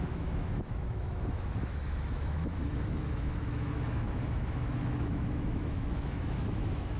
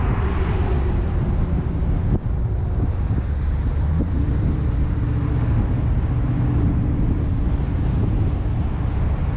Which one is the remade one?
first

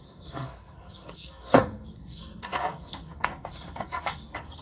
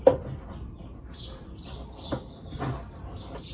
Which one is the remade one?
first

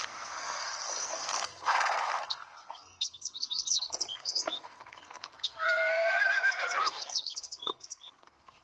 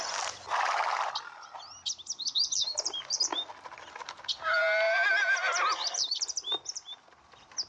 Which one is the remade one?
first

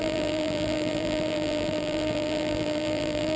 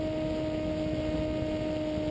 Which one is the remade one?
first